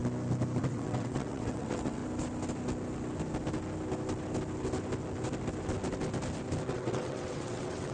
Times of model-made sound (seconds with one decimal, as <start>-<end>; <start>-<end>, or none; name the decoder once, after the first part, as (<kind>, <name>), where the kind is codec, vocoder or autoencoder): 0.6-2.0 (vocoder, WaveNeXt); 6.7-7.9